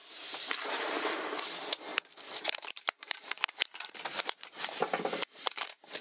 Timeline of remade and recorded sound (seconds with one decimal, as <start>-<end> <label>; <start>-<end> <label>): 0.0-1.2 remade; 1.2-1.9 recorded; 1.9-5.5 remade; 5.5-6.0 recorded